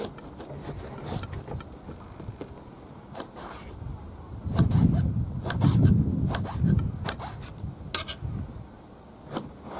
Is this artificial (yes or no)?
no